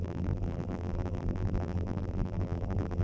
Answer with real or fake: fake